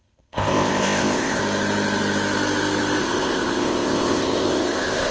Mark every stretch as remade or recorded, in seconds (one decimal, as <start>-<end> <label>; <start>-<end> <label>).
0.0-1.4 remade; 1.4-3.0 recorded; 3.0-5.1 remade